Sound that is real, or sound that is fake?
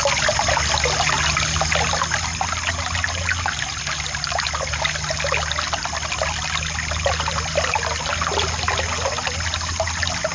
real